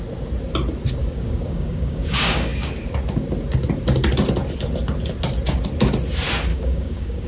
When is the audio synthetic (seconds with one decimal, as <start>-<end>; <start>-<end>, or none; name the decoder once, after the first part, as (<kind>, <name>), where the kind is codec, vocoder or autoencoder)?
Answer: 1.0-2.8 (codec, DAC); 6.5-7.3